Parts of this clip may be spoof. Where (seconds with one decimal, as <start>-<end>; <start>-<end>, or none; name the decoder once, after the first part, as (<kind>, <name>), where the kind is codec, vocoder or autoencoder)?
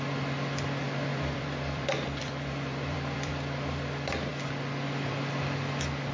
1.1-3.3 (vocoder, BigVGAN v2)